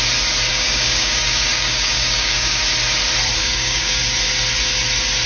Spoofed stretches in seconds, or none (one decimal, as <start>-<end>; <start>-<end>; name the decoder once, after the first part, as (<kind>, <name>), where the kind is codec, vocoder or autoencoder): 0.5-2.6 (codec, DAC); 3.4-4.0